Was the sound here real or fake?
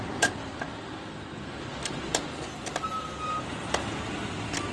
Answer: real